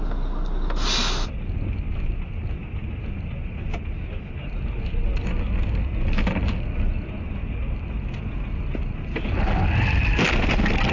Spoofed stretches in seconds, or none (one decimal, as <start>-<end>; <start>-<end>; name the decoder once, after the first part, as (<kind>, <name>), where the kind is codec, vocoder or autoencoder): none